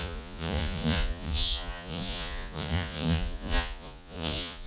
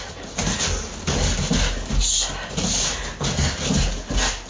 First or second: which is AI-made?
first